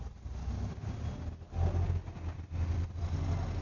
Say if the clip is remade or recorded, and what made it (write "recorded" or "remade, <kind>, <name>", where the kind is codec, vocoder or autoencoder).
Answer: recorded